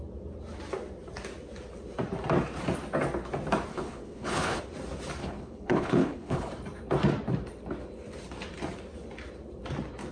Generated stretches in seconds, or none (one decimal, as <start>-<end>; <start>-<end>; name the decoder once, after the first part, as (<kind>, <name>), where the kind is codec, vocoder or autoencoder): 3.7-4.6 (codec, HILCodec); 5.2-6.5